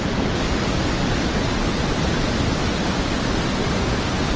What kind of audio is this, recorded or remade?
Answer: recorded